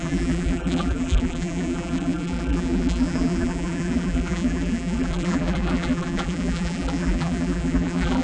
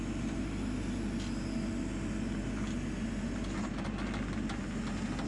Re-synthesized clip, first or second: first